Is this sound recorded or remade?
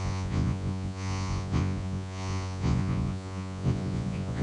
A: remade